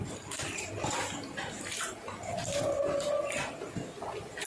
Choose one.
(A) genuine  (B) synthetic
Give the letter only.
B